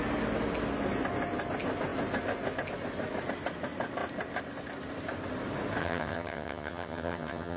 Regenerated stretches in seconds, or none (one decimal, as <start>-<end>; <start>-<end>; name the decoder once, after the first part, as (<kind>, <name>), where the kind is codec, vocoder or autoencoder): 5.8-7.6 (vocoder, HiFi-GAN)